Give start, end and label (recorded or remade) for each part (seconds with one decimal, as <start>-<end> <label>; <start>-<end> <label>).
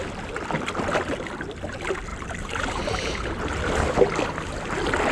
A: 0.0-2.1 recorded; 2.1-3.4 remade; 3.4-5.1 recorded